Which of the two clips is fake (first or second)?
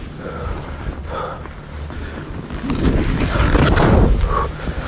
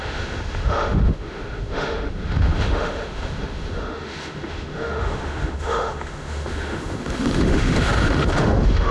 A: second